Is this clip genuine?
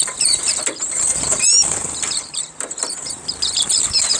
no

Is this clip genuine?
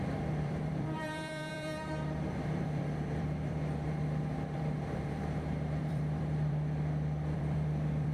no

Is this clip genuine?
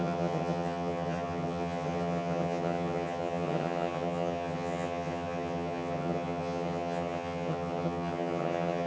no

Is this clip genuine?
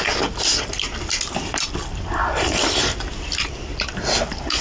yes